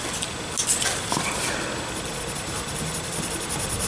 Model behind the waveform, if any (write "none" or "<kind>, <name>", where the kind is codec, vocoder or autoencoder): none